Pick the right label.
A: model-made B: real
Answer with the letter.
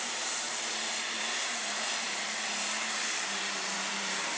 A